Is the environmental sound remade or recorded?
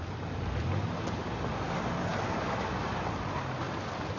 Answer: recorded